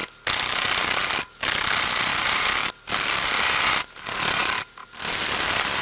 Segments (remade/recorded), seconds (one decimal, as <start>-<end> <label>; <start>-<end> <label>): 0.0-2.1 recorded; 2.1-2.7 remade; 2.7-5.8 recorded